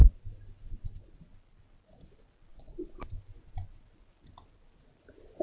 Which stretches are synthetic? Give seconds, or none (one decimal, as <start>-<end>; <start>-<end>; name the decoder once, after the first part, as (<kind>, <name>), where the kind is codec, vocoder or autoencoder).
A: 2.5-3.1 (vocoder, Vocos)

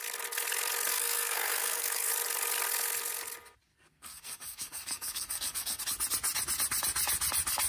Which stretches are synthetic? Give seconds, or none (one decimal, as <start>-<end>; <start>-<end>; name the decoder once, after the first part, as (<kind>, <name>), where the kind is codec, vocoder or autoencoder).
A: 0.9-2.1 (codec, SNAC); 3.7-5.8

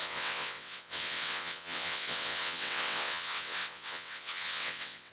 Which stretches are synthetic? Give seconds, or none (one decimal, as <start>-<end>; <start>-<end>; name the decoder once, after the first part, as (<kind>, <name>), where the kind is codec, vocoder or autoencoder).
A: 0.0-5.1 (vocoder, WaveNeXt)

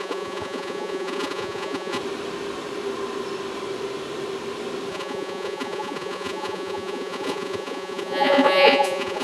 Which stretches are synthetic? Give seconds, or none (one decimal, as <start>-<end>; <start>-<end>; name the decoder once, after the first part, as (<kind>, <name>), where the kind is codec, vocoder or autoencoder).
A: 0.0-2.0 (vocoder, Vocos); 4.9-9.2

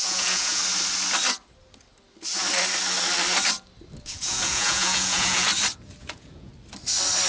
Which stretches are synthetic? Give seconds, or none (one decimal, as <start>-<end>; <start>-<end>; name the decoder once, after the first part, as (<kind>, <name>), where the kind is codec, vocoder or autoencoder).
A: 0.0-0.6 (vocoder, Vocos); 4.1-5.5; 6.0-6.5

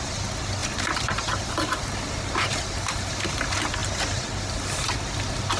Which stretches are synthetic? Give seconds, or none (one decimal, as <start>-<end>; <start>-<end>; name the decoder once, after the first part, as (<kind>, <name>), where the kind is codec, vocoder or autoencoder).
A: 0.6-3.1 (vocoder, BigVGAN v2)